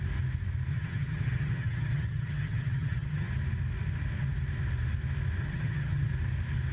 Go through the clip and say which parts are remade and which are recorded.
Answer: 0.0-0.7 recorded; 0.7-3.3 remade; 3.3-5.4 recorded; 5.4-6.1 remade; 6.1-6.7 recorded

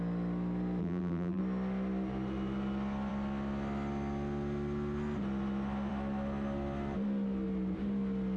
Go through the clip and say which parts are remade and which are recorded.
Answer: 0.0-0.8 recorded; 0.8-1.4 remade; 1.4-8.4 recorded

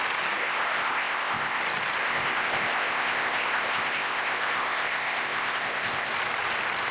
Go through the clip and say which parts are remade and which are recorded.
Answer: 0.0-0.4 recorded; 0.4-1.6 remade; 1.6-2.0 recorded; 2.0-6.1 remade; 6.1-6.9 recorded

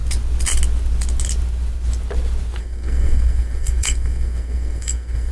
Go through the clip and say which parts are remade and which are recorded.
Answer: 0.0-2.6 recorded; 2.6-5.3 remade

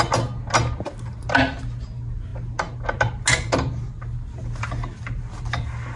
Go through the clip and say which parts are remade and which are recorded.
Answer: 0.0-6.0 recorded

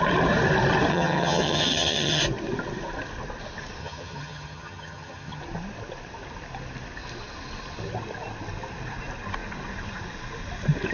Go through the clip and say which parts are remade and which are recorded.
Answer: 0.0-0.9 recorded; 0.9-2.2 remade; 2.2-3.8 recorded; 3.8-5.4 remade; 5.4-10.9 recorded